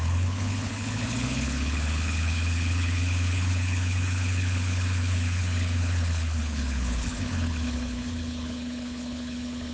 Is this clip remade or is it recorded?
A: remade